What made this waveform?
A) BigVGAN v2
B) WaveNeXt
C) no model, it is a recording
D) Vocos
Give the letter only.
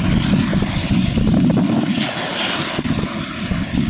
C